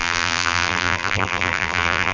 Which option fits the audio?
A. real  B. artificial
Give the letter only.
B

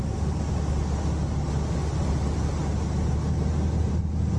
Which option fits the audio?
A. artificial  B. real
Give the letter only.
B